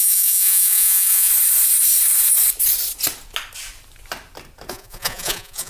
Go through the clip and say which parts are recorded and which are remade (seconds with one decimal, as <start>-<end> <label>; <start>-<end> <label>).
0.0-1.3 remade; 1.3-4.7 recorded; 4.7-5.7 remade